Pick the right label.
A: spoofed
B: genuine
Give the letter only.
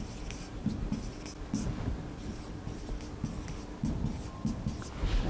B